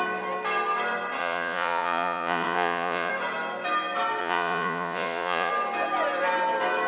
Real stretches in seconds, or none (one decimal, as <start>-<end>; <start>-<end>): 0.0-1.2; 3.1-4.2; 5.5-6.9